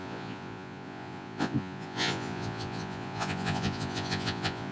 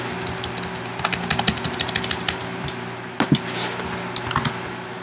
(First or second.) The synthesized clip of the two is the first